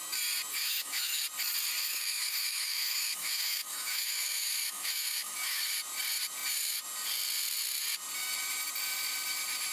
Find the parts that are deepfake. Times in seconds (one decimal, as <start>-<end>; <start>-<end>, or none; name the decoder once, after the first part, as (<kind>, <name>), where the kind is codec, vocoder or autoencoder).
0.5-1.2 (autoencoder, DAC-VAE); 1.8-5.7